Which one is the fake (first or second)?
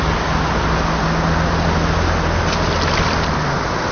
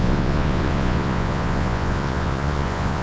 second